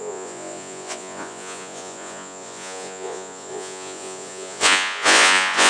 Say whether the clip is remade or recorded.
remade